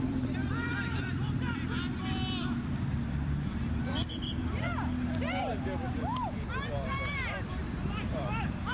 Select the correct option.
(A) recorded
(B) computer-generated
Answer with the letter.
B